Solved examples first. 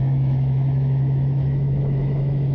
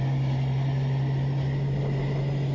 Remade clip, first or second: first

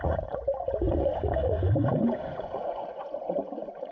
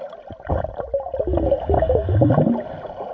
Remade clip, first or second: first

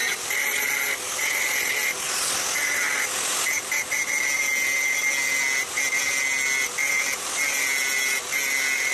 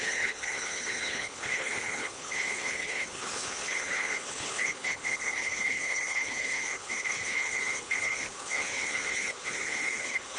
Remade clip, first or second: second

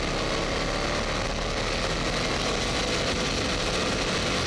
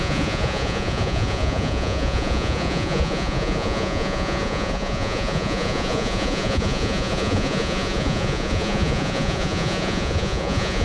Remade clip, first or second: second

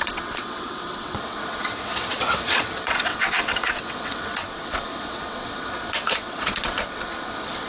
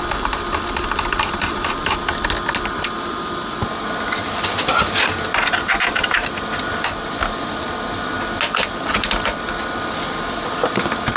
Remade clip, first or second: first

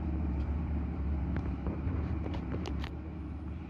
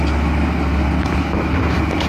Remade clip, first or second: first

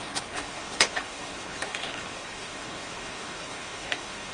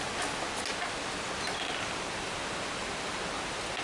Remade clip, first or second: first